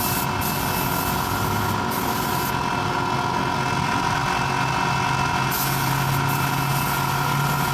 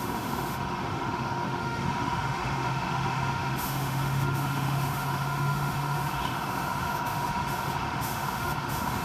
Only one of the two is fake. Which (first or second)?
second